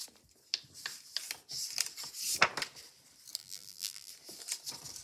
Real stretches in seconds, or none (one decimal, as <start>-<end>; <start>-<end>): 0.0-3.4; 4.1-5.0